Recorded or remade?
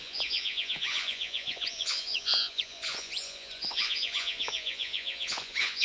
remade